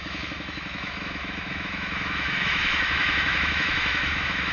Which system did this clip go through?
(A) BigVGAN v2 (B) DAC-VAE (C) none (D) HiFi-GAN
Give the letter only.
B